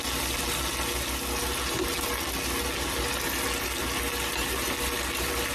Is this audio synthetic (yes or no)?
no